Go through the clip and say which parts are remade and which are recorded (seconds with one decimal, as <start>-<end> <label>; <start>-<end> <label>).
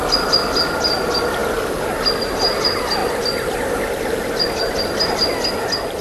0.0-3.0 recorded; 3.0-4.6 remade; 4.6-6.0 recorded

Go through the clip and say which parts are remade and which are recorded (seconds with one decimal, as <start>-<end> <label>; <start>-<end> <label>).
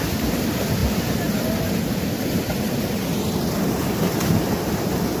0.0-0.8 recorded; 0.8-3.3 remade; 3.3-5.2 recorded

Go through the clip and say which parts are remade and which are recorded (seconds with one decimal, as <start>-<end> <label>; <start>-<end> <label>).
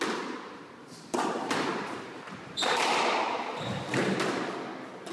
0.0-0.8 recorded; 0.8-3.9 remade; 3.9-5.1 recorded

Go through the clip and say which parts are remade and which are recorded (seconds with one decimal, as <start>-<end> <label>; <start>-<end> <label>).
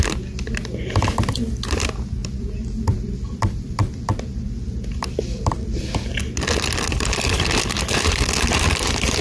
0.0-2.2 recorded; 2.2-5.9 remade; 5.9-9.2 recorded